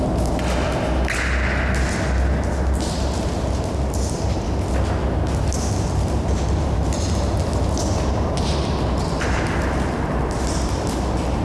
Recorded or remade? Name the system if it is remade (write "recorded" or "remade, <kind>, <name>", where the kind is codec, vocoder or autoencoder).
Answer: recorded